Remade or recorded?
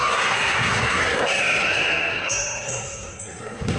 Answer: remade